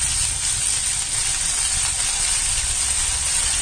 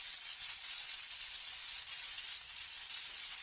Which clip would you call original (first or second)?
first